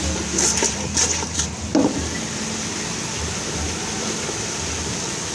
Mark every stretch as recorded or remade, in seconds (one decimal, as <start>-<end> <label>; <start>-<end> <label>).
0.0-5.3 recorded